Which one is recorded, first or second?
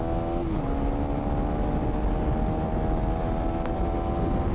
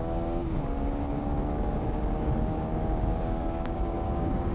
first